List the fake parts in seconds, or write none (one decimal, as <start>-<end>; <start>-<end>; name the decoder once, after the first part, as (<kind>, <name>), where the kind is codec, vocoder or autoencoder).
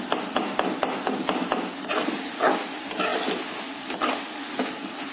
none